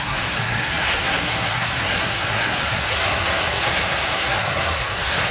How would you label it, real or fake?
fake